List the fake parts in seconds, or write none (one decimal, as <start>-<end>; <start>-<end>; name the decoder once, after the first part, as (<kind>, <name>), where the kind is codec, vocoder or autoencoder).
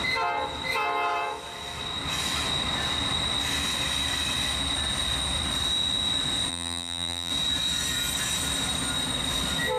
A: 6.5-7.3 (vocoder, BigVGAN v2)